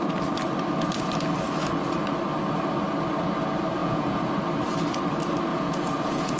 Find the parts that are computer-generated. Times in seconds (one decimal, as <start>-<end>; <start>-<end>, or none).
3.8-4.3; 5.5-6.4